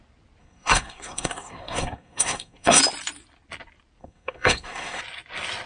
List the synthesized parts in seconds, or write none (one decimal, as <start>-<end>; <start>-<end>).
0.4-2.8; 4.0-5.0